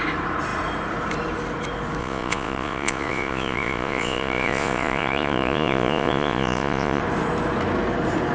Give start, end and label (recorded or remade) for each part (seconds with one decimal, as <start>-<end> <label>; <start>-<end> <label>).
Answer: 0.0-2.0 recorded; 2.0-7.0 remade; 7.0-8.3 recorded